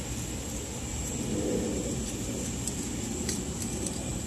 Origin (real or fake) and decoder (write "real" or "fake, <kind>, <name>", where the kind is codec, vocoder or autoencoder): real